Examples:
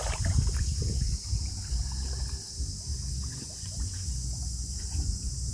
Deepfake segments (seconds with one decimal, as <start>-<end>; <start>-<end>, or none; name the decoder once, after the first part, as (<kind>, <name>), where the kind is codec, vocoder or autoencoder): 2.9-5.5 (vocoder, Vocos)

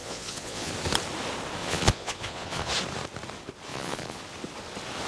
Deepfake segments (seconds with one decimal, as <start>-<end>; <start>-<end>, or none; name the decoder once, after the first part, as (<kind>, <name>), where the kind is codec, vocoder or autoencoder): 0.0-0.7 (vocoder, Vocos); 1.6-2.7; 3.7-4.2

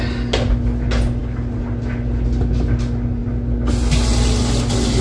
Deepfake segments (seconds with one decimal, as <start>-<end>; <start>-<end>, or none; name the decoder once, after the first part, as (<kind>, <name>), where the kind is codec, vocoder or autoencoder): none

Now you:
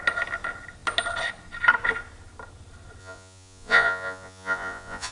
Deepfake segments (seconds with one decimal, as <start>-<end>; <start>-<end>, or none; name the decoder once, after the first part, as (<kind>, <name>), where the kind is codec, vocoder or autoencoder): 3.0-5.1 (vocoder, Vocos)